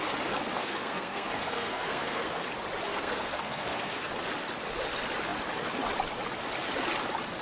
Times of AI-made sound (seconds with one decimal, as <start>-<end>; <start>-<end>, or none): 0.6-2.4; 2.9-4.1